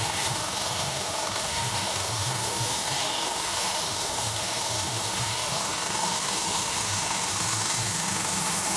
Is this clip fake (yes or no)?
yes